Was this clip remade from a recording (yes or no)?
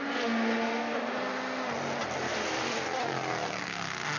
no